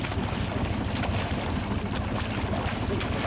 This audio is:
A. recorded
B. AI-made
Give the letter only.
A